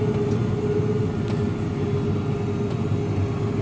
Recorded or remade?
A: recorded